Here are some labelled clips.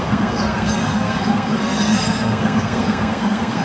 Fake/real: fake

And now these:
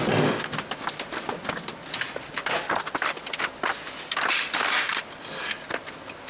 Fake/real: real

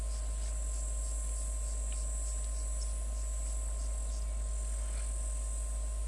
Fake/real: real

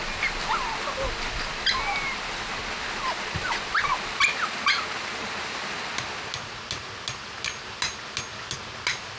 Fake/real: real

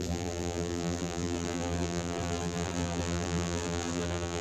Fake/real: fake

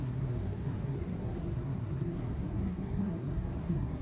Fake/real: fake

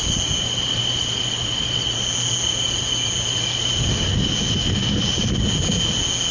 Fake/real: real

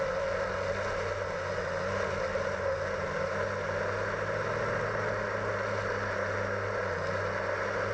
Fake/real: real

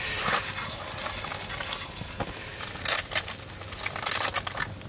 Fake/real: real